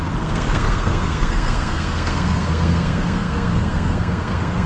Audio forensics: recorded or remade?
remade